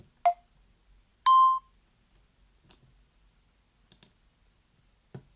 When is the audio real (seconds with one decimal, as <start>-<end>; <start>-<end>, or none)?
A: 0.0-5.4